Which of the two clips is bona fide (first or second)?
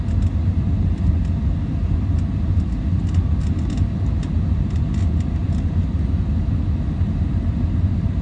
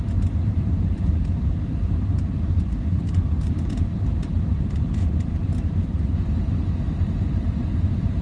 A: first